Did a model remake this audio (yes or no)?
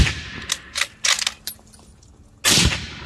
no